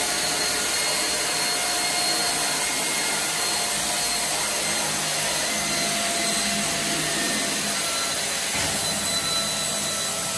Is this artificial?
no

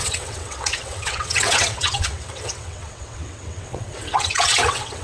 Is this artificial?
yes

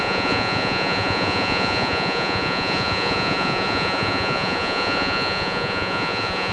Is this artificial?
yes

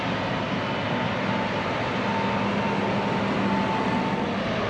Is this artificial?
no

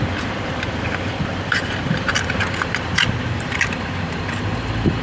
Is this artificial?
yes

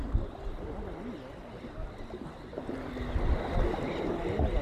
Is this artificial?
no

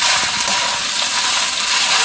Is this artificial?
no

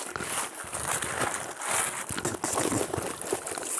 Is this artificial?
no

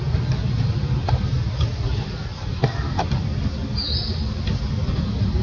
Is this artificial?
no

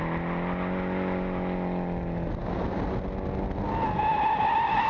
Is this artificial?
no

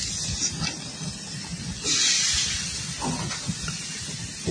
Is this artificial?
no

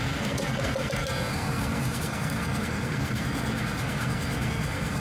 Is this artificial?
yes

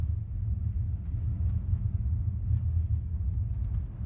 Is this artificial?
no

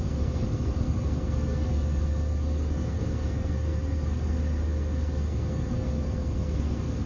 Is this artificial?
yes